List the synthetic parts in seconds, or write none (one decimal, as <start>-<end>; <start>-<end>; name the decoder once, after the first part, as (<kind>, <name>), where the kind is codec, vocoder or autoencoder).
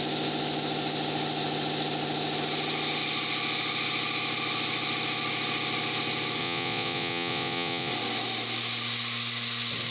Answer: 6.4-7.9 (vocoder, Vocos)